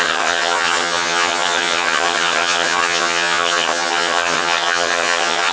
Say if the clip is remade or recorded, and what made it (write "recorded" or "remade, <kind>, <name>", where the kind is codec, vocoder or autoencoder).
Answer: remade, vocoder, HiFi-GAN